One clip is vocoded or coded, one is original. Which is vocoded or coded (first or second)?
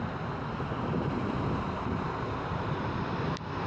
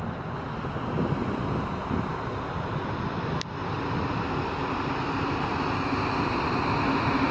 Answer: first